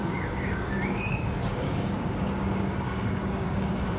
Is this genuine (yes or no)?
no